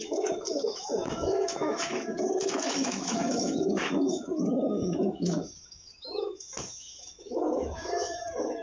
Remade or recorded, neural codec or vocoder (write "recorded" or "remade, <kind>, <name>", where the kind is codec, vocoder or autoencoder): remade, autoencoder, DAC-VAE